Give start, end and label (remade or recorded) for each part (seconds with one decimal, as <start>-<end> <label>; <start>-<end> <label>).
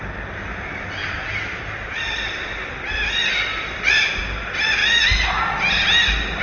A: 0.0-1.0 recorded; 1.0-2.8 remade; 2.8-3.5 recorded; 3.5-4.0 remade; 4.0-6.4 recorded